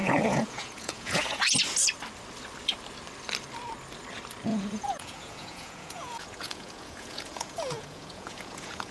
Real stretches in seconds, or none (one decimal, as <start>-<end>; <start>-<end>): 1.4-4.5